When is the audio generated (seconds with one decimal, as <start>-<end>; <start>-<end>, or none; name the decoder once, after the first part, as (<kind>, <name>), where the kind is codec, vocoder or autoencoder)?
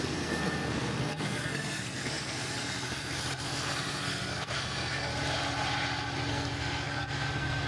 0.0-5.1 (codec, SNAC); 6.3-7.7